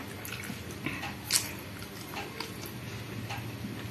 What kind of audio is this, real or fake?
real